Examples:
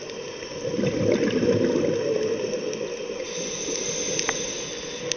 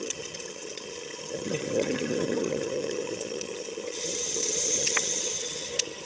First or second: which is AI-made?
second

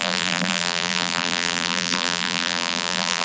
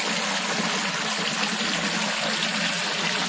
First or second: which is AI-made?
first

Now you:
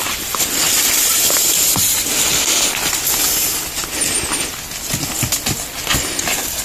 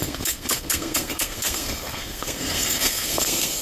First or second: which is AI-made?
second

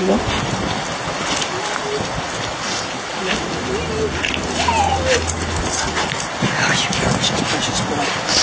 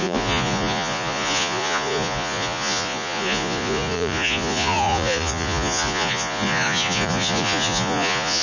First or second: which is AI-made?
second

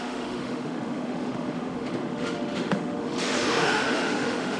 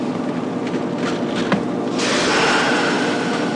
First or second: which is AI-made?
first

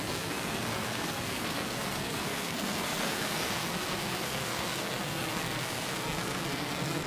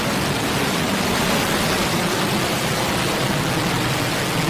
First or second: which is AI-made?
first